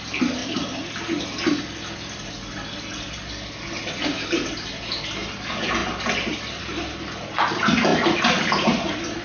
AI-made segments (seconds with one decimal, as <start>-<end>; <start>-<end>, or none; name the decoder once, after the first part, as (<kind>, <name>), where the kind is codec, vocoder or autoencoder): none